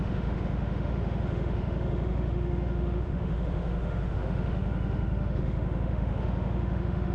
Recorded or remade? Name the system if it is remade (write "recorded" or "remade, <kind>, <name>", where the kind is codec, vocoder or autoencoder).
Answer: remade, autoencoder, DAC-VAE